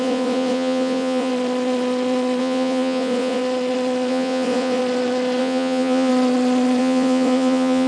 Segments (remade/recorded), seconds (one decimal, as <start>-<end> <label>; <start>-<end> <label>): 0.0-1.3 remade; 1.3-2.4 recorded; 2.4-3.4 remade; 3.4-4.1 recorded; 4.1-4.8 remade; 4.8-5.4 recorded; 5.4-6.1 remade; 6.1-6.8 recorded; 6.8-7.9 remade